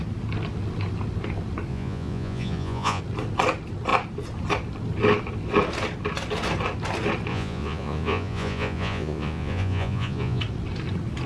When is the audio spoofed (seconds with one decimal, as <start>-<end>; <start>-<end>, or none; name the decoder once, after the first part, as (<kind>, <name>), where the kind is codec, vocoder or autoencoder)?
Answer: 1.7-3.0 (vocoder, Vocos); 7.3-10.4